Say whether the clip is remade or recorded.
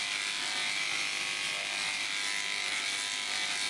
recorded